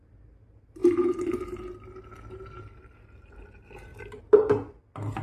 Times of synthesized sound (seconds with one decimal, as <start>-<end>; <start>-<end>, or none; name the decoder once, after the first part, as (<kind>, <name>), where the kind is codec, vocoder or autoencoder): 0.8-2.0 (vocoder, BigVGAN v2); 3.9-4.5